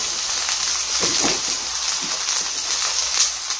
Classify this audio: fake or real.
real